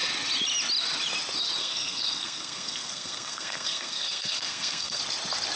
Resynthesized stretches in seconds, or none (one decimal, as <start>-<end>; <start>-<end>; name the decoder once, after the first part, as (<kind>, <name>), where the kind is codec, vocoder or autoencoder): 1.6-5.0 (codec, SNAC)

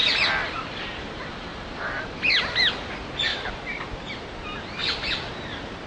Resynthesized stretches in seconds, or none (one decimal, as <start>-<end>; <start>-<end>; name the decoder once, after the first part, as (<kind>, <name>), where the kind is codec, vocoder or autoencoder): 0.0-1.0 (vocoder, BigVGAN v2); 1.5-2.2; 3.3-3.8

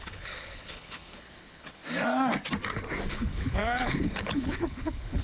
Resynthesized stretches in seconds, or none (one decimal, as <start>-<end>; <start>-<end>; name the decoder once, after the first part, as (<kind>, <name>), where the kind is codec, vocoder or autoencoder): 0.0-1.8 (codec, HILCodec); 3.1-5.2

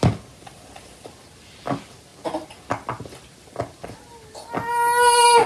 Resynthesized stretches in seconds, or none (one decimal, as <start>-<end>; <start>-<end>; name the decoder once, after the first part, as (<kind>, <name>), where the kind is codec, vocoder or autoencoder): none

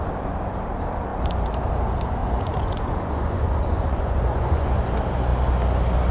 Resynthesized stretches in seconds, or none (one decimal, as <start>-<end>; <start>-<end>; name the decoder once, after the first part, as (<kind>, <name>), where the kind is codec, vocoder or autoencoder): 2.2-4.8 (vocoder, Vocos)

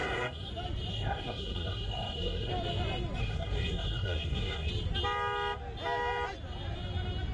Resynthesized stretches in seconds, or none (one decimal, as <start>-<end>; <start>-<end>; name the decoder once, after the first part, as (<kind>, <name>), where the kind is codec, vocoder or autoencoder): 0.0-0.5 (codec, SNAC); 0.9-2.5; 3.2-4.7